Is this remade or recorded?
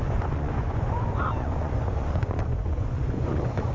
remade